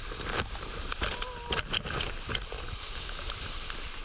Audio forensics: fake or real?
real